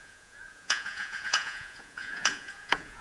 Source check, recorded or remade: remade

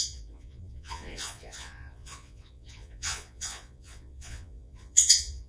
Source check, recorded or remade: remade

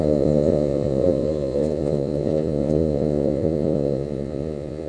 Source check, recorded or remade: remade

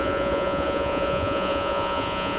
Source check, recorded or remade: remade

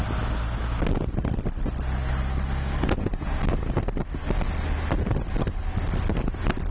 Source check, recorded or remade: recorded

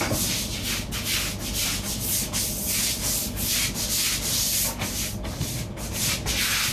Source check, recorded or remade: recorded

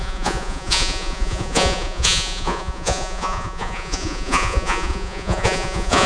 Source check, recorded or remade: remade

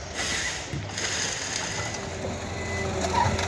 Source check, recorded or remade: recorded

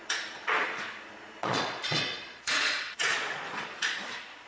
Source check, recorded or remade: remade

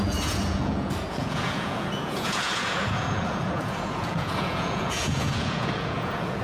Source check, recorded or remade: remade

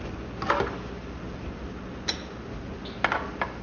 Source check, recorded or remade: recorded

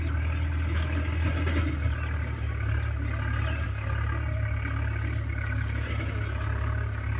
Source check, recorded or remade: recorded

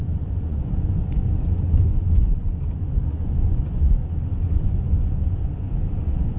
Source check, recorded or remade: remade